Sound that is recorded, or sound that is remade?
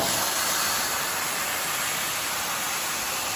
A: recorded